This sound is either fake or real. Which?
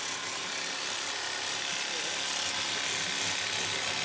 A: real